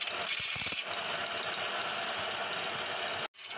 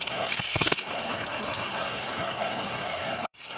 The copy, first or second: second